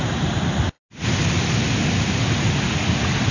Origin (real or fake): real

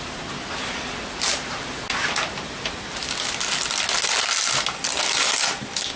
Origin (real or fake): real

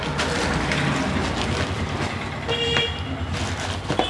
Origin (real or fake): real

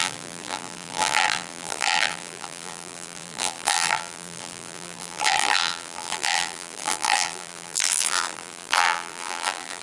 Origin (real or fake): fake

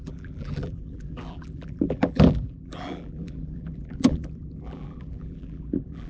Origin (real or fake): fake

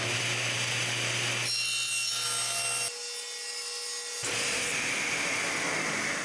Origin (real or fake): real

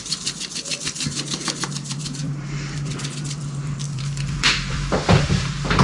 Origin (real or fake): fake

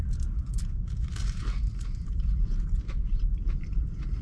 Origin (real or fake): fake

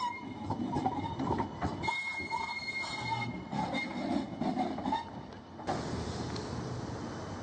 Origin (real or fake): real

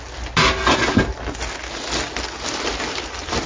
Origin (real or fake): real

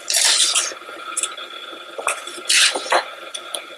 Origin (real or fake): fake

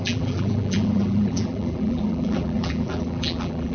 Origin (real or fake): fake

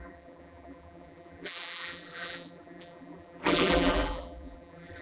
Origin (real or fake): fake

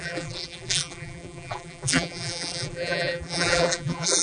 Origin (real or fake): fake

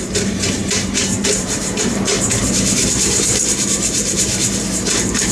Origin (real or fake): fake